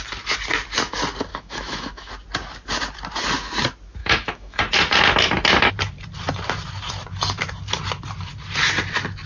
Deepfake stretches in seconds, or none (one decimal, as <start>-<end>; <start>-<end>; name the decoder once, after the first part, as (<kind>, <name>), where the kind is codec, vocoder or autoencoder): 1.3-2.1 (autoencoder, DAC-VAE); 4.0-4.6